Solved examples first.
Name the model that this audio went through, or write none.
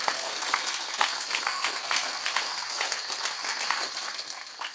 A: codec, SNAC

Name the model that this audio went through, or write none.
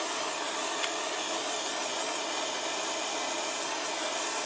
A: none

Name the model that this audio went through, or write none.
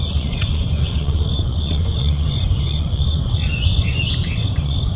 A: vocoder, Vocos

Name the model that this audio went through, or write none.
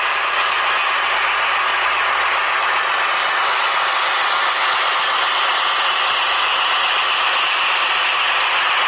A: none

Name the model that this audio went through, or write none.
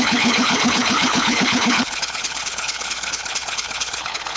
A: codec, HILCodec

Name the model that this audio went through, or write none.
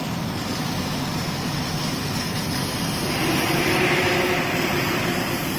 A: none